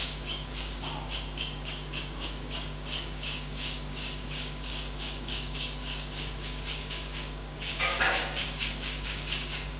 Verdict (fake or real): fake